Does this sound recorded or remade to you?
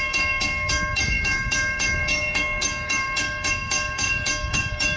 remade